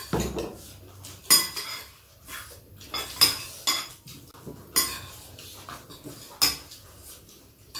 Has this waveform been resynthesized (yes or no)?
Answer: no